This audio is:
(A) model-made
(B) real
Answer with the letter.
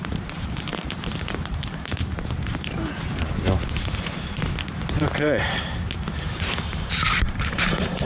A